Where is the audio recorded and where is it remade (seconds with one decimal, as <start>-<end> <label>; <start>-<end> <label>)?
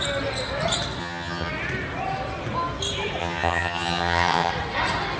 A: 0.0-1.0 recorded; 1.0-1.5 remade; 1.5-3.2 recorded; 3.2-4.5 remade; 4.5-5.2 recorded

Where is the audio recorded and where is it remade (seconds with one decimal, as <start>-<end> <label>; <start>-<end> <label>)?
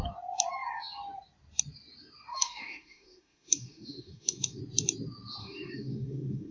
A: 0.0-2.3 recorded; 2.3-4.6 remade; 4.6-5.4 recorded; 5.4-6.5 remade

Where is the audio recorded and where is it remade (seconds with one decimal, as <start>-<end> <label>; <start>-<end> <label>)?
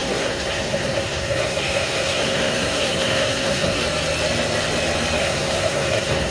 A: 0.0-3.8 remade; 3.8-5.2 recorded; 5.2-6.3 remade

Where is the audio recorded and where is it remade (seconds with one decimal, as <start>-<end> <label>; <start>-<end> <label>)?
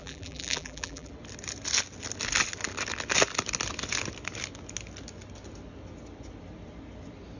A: 0.0-1.1 remade; 1.1-7.4 recorded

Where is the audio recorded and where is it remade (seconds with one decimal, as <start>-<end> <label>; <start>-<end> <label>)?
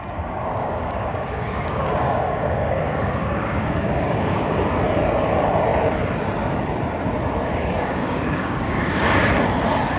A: 0.0-0.5 recorded; 0.5-4.6 remade; 4.6-8.0 recorded; 8.0-9.3 remade; 9.3-10.0 recorded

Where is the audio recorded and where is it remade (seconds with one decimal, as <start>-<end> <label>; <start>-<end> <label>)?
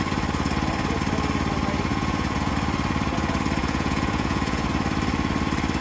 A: 0.0-1.9 recorded; 1.9-2.5 remade; 2.5-3.6 recorded; 3.6-4.7 remade; 4.7-5.8 recorded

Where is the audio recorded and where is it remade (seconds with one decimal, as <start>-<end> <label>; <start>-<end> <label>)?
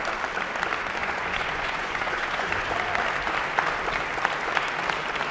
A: 0.0-1.0 recorded; 1.0-2.7 remade; 2.7-5.3 recorded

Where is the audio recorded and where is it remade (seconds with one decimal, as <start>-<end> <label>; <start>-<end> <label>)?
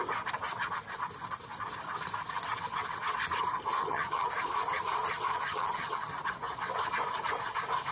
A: 0.0-3.8 recorded; 3.8-4.3 remade; 4.3-5.3 recorded; 5.3-6.1 remade; 6.1-7.9 recorded